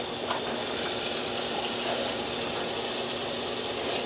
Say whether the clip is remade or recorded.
recorded